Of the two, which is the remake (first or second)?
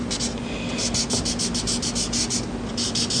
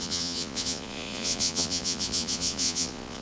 second